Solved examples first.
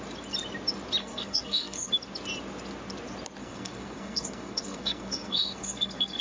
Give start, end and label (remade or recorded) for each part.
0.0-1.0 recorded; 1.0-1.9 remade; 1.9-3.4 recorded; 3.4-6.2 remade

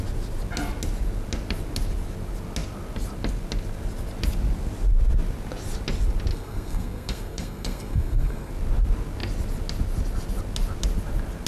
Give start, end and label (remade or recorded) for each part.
0.0-6.3 recorded; 6.3-8.5 remade; 8.5-11.5 recorded